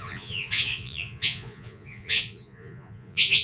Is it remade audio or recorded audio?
remade